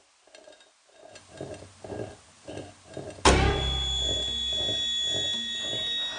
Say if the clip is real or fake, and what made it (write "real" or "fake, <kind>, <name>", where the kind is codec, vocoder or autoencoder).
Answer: real